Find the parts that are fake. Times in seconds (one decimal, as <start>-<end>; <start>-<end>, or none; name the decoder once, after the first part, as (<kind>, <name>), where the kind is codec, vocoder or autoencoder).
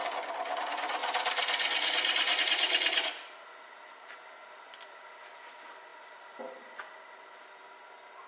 none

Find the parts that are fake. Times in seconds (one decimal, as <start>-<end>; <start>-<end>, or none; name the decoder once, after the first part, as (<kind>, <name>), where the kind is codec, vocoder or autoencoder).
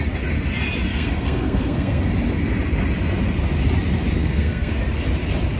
0.9-2.0 (codec, SNAC); 4.2-4.8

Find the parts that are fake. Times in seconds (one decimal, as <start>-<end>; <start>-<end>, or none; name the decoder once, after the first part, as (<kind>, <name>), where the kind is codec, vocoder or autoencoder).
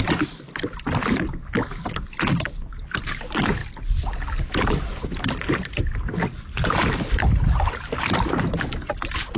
none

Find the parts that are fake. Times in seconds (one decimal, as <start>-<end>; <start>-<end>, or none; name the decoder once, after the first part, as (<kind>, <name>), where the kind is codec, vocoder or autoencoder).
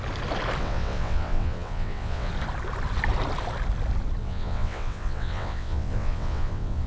0.6-2.3 (vocoder, WaveNeXt); 4.2-6.9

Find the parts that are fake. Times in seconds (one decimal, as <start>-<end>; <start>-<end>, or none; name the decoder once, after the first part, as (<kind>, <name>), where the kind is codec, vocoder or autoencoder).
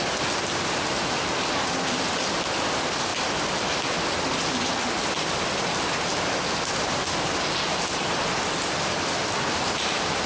none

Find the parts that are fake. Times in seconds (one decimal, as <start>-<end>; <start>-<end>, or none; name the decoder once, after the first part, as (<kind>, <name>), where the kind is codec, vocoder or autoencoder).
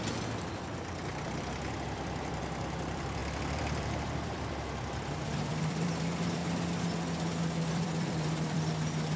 0.0-6.4 (vocoder, BigVGAN v2); 7.7-9.2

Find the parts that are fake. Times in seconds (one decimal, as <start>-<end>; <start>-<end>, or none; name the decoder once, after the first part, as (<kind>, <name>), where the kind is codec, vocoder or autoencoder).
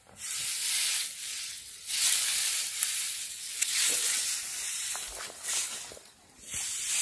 1.3-2.1 (vocoder, WaveNeXt); 3.2-4.2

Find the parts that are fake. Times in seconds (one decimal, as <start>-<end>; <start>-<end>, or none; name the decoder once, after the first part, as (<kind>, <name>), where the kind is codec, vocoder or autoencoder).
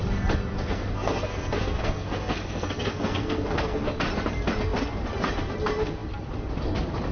0.5-3.8 (codec, SNAC)